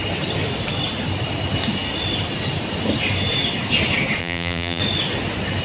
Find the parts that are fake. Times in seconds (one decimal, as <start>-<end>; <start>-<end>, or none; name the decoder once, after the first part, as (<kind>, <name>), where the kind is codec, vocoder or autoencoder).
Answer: 4.2-4.8 (vocoder, BigVGAN v2)